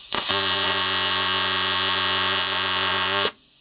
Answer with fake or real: fake